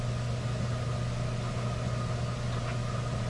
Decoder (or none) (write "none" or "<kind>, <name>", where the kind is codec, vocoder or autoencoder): none